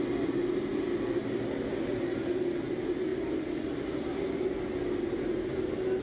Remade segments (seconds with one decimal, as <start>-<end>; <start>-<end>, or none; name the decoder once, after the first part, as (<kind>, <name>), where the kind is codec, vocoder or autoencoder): none

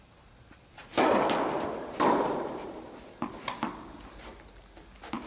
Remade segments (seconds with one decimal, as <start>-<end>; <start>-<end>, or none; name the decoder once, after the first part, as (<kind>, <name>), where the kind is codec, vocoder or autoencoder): none

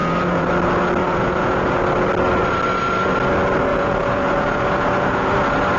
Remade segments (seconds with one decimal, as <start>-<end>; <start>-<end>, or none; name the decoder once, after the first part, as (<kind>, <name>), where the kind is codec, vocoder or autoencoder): 0.0-0.5 (vocoder, Vocos); 1.0-1.8; 3.7-5.3

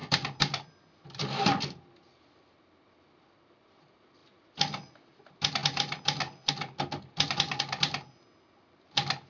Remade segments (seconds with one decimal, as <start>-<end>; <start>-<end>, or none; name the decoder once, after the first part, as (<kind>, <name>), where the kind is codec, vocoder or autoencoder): none

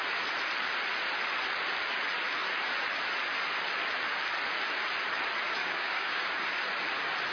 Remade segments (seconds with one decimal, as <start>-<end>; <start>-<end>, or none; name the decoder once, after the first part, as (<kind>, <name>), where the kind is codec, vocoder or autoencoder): 5.6-6.3 (codec, DAC)